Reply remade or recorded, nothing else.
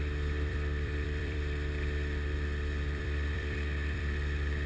remade